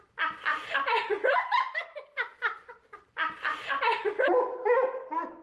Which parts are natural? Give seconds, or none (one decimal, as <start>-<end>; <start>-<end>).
0.0-0.5; 3.7-5.4